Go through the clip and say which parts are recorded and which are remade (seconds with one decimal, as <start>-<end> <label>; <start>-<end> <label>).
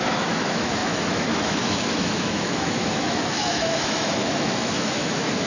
0.0-5.5 remade